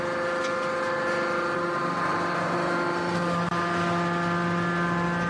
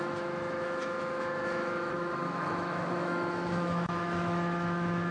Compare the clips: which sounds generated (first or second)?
second